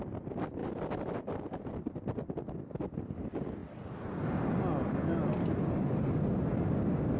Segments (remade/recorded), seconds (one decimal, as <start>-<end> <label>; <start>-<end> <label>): 0.0-7.2 recorded